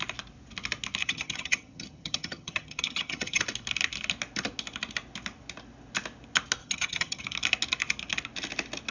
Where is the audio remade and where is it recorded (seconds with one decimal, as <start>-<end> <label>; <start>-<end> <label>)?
0.0-1.0 recorded; 1.0-3.4 remade; 3.4-6.6 recorded; 6.6-7.2 remade; 7.2-8.9 recorded